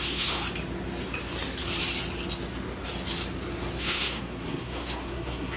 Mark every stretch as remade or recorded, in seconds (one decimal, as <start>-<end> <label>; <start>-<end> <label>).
0.0-0.4 remade; 0.4-3.8 recorded; 3.8-5.6 remade